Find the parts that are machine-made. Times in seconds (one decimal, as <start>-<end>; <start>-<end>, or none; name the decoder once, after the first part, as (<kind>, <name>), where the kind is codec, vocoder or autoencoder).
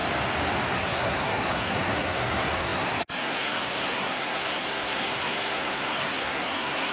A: 0.7-6.9 (codec, SNAC)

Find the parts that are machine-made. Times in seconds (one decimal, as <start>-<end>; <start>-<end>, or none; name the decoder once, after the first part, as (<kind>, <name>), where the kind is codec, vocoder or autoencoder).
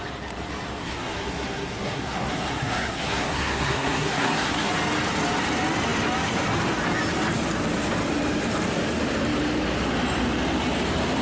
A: 0.8-4.7 (codec, SNAC)